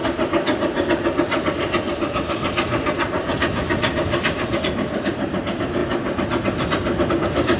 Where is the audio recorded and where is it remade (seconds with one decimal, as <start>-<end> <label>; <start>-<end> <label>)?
0.0-4.6 recorded; 4.6-5.8 remade; 5.8-7.1 recorded; 7.1-7.6 remade